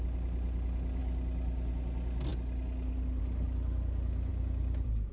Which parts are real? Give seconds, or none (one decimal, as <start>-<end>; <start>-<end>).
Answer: 0.0-5.1